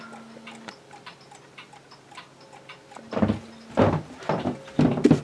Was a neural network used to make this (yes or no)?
no